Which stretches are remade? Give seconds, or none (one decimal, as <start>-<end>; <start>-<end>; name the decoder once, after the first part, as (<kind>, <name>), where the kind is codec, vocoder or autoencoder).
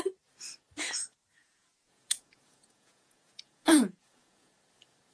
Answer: 1.4-4.5 (vocoder, Vocos)